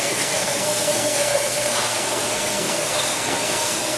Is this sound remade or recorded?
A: remade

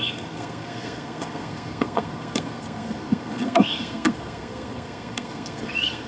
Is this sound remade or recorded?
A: remade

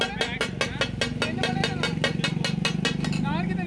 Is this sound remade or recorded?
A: recorded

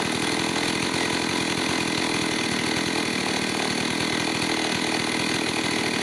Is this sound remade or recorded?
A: recorded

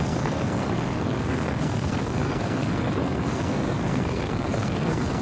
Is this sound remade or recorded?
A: remade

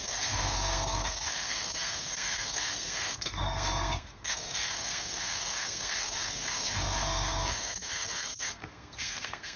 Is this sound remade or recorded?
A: remade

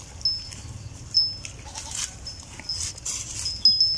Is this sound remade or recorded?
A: recorded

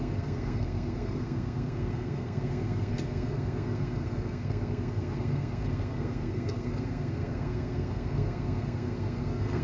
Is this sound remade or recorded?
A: remade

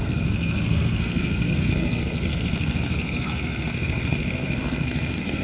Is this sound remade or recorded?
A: remade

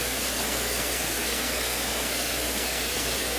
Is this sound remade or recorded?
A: remade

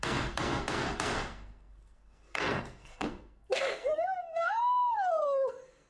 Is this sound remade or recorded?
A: remade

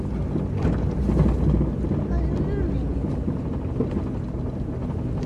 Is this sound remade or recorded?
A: recorded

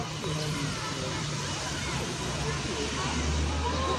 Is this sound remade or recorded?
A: recorded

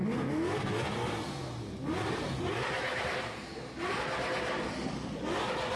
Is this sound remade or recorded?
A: recorded